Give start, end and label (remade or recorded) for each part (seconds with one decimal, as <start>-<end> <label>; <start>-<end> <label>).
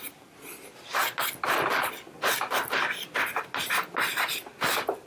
0.0-5.1 recorded